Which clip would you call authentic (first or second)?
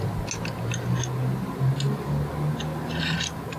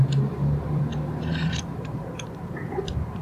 first